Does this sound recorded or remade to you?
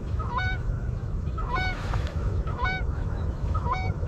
remade